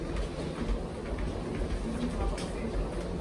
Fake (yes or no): no